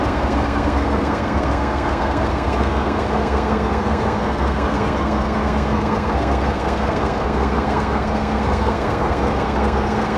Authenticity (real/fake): fake